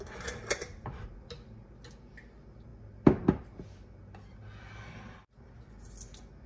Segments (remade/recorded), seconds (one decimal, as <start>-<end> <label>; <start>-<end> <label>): 0.0-6.5 recorded